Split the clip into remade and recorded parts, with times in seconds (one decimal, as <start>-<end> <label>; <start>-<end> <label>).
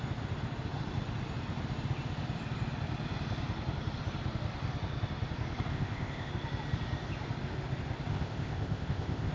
0.0-5.7 recorded; 5.7-6.3 remade; 6.3-8.1 recorded; 8.1-9.3 remade